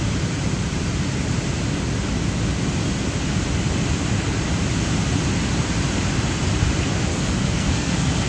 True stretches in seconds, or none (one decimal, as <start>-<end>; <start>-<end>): 0.0-7.1